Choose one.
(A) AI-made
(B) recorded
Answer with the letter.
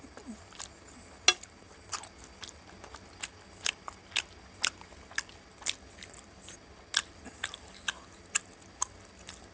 B